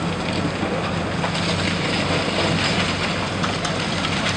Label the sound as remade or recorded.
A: recorded